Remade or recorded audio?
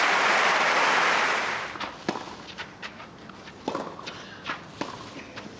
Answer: recorded